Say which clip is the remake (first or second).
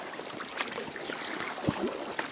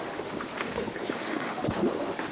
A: second